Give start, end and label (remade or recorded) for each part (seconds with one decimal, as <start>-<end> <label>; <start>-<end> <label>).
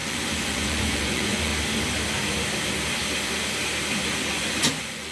0.0-1.5 remade; 1.5-4.3 recorded; 4.3-5.1 remade